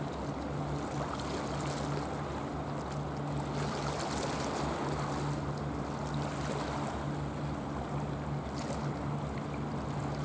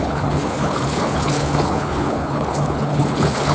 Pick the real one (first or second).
first